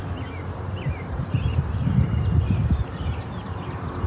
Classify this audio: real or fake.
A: fake